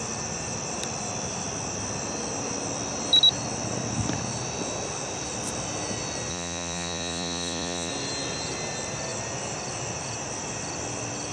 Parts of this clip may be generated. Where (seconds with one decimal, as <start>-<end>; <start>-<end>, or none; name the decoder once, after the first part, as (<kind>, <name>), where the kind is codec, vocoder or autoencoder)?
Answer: 6.3-7.9 (vocoder, Vocos)